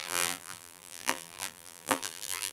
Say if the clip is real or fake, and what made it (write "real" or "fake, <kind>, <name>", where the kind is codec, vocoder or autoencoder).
fake, vocoder, BigVGAN v2